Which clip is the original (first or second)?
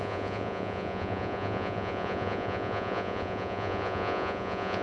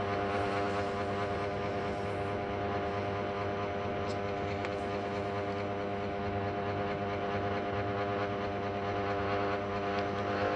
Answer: second